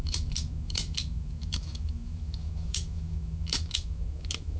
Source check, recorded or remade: remade